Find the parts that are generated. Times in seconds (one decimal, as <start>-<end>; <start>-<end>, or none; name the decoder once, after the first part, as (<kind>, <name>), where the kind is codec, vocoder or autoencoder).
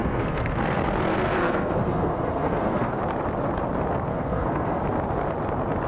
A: 0.0-3.0 (codec, SNAC); 4.1-4.8